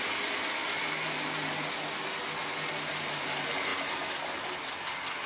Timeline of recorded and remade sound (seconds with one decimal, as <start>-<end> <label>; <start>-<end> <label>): 0.0-5.3 recorded